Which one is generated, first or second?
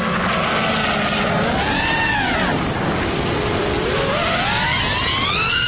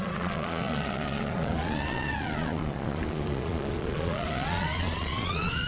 second